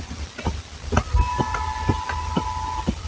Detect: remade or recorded recorded